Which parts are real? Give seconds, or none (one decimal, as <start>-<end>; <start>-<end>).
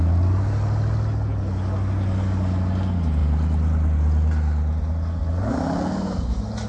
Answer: 0.0-6.7